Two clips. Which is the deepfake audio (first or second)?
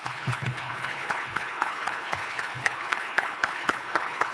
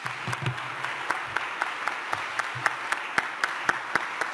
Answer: first